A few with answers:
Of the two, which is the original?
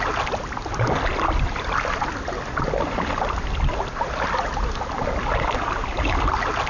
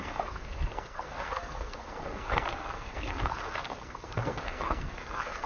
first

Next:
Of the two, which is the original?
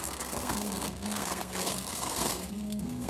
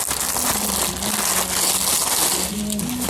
second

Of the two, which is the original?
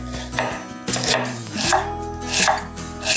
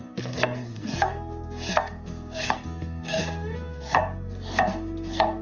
first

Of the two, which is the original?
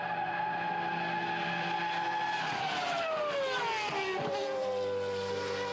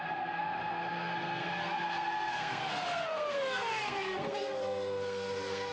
first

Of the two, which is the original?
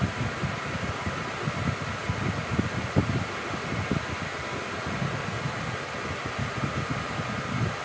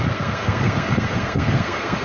first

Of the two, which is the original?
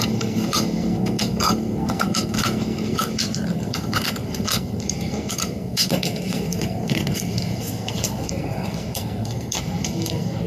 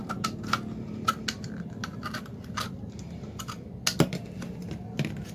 second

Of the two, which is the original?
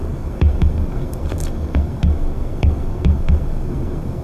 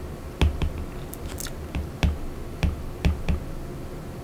second